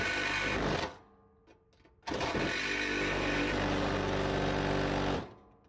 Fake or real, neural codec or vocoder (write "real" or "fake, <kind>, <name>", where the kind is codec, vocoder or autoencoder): real